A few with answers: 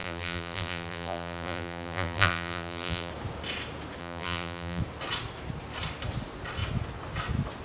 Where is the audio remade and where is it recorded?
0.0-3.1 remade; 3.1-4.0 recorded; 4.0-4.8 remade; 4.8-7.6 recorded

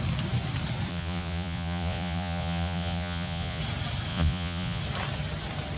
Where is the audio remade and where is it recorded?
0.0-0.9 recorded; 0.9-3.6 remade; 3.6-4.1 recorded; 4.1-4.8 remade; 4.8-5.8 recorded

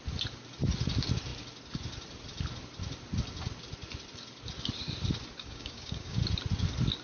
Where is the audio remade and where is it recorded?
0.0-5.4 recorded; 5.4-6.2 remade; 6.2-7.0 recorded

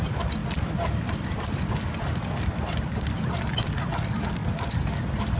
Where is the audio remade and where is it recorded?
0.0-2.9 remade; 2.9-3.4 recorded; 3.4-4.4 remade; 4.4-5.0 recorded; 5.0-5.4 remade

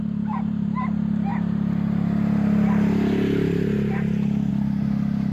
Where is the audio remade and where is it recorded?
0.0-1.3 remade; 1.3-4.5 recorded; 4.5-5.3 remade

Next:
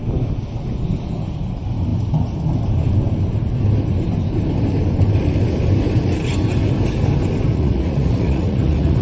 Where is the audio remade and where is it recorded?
0.0-7.5 recorded; 7.5-9.0 remade